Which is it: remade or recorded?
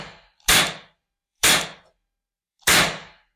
remade